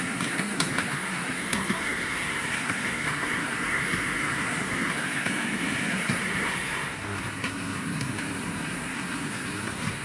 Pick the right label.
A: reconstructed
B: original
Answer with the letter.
A